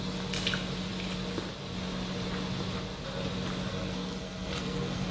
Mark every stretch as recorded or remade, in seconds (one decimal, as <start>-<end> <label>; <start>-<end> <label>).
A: 0.0-3.7 recorded; 3.7-5.1 remade